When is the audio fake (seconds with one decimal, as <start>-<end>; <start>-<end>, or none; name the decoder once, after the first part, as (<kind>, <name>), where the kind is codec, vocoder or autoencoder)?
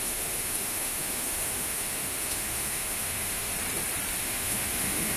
0.0-3.5 (autoencoder, DAC-VAE); 4.2-5.2